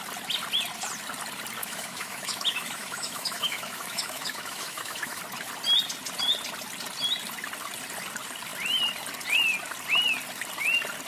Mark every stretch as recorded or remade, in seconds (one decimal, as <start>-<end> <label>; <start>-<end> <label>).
0.0-1.6 recorded; 1.6-5.2 remade; 5.2-11.1 recorded